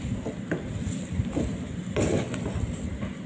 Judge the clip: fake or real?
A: real